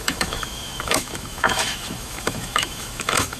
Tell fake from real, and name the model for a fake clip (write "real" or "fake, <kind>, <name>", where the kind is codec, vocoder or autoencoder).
fake, autoencoder, DAC-VAE